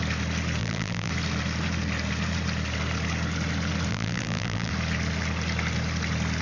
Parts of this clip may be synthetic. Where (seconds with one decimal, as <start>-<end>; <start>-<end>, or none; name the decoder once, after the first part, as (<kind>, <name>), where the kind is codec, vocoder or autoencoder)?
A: 0.6-1.1 (vocoder, BigVGAN v2); 3.9-4.7